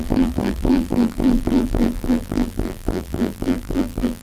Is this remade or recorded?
remade